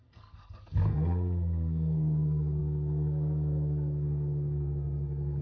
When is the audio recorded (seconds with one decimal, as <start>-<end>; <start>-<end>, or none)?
none